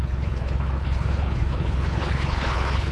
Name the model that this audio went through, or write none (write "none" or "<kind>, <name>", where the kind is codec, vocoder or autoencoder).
codec, HILCodec